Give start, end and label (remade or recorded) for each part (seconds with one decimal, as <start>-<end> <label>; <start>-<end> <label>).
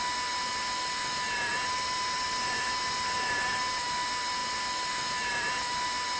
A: 0.0-6.2 recorded